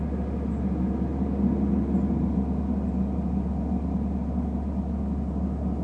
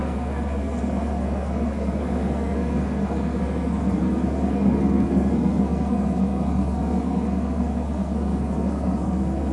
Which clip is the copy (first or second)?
second